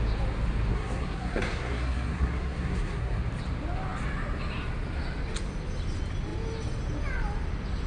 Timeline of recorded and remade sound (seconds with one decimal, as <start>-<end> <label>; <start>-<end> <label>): 0.0-0.7 recorded; 0.7-3.2 remade; 3.2-7.9 recorded